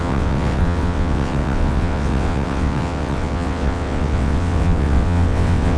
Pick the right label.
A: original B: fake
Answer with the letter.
B